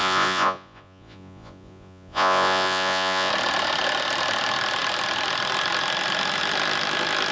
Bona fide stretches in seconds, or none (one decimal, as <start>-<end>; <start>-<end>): 3.3-7.3